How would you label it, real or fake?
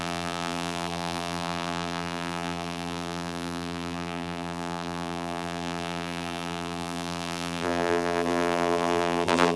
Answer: fake